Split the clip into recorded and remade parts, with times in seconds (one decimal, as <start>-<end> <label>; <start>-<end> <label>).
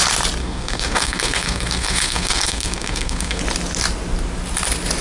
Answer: 0.0-0.4 recorded; 0.4-3.4 remade; 3.4-5.0 recorded